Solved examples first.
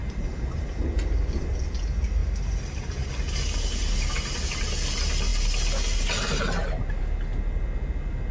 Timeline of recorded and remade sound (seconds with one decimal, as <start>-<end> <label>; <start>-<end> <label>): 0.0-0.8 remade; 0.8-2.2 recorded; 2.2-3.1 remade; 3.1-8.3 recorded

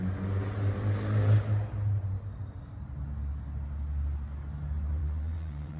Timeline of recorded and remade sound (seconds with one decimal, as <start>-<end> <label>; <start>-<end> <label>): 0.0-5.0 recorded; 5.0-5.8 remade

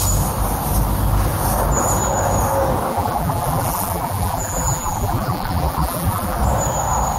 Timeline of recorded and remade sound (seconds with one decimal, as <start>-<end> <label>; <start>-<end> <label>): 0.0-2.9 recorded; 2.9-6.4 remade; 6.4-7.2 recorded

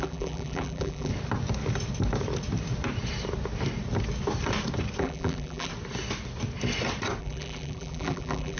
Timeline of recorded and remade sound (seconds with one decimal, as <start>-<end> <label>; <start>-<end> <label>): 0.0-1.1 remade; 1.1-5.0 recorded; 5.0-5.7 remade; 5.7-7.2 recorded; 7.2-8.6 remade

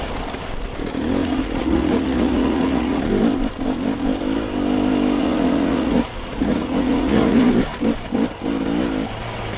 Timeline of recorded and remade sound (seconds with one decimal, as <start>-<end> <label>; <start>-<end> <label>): 0.0-1.2 recorded; 1.2-3.0 remade; 3.0-5.2 recorded; 5.2-7.4 remade; 7.4-9.6 recorded

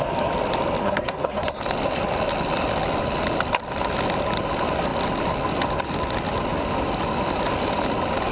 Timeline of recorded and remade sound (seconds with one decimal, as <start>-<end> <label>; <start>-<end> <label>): 0.0-0.8 recorded; 0.8-1.6 remade; 1.6-8.3 recorded